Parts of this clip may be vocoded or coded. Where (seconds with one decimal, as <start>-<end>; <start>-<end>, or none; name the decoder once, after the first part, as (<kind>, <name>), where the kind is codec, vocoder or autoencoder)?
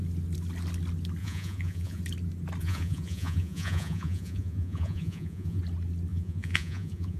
1.2-2.0 (vocoder, Vocos); 2.6-5.6; 6.1-7.2